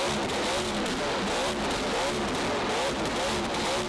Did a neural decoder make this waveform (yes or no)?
no